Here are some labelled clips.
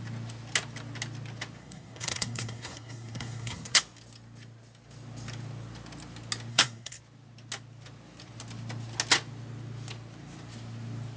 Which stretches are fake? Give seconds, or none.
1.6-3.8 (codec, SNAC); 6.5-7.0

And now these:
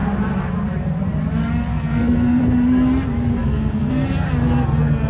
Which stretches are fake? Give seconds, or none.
1.7-2.4 (codec, SNAC); 3.3-3.9

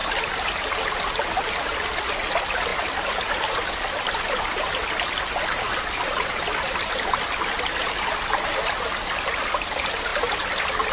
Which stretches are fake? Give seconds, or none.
none

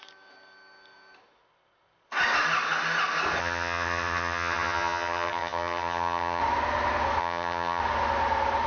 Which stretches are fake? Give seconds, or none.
3.4-6.4 (vocoder, HiFi-GAN); 7.2-7.8

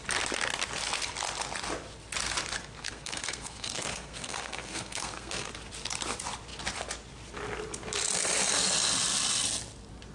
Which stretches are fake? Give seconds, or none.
2.8-5.5 (codec, SNAC)

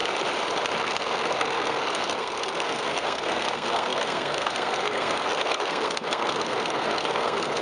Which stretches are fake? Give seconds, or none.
0.8-7.6 (codec, SNAC)

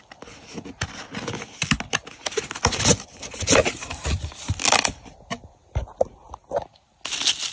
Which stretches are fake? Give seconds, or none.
none

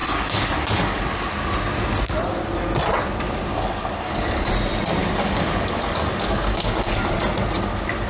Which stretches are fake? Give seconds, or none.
0.0-1.0 (codec, DAC); 3.5-4.5; 5.0-7.1